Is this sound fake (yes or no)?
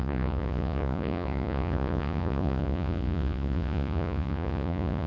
yes